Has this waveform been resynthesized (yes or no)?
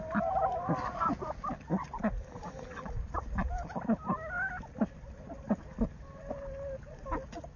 no